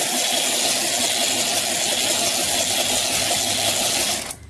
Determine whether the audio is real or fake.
real